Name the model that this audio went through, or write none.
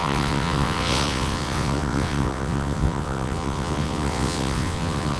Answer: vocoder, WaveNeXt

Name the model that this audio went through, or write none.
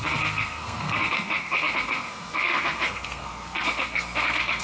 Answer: codec, SNAC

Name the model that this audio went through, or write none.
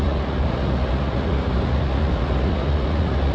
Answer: vocoder, Vocos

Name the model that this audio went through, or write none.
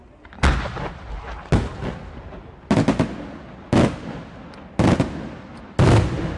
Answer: none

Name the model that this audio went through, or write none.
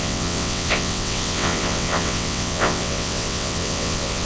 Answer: vocoder, WaveNeXt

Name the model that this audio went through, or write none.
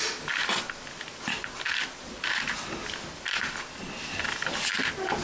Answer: none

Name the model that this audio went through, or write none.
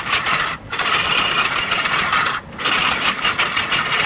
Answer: none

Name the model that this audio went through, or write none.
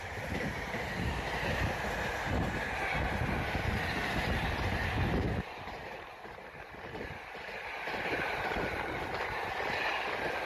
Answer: none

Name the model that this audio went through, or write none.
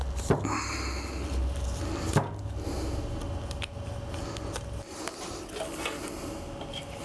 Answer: none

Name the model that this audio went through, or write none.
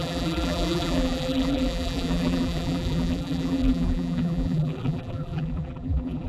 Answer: vocoder, BigVGAN v2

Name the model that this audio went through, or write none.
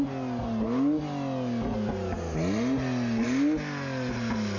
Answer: none